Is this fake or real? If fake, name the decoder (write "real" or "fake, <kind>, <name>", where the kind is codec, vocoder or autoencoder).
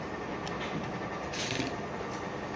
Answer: real